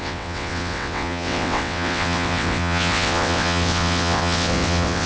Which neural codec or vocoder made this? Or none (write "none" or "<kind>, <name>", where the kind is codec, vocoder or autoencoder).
vocoder, WaveNeXt